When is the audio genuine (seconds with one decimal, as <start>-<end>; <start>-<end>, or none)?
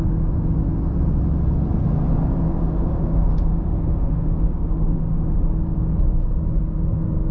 0.0-2.6; 5.5-7.3